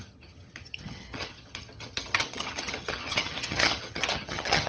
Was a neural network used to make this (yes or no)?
yes